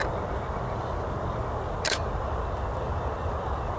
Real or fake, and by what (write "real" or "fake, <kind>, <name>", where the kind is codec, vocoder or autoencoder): real